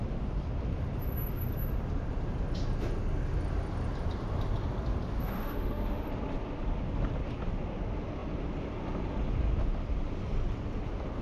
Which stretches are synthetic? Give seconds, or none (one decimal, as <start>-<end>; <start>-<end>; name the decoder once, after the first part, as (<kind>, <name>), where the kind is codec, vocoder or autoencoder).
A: 5.2-6.1 (autoencoder, DAC-VAE)